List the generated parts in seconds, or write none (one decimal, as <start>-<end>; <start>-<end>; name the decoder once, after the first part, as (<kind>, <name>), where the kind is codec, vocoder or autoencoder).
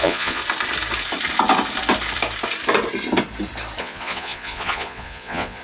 0.0-0.4 (vocoder, Vocos); 3.8-5.6